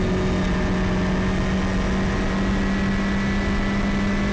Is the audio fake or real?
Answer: real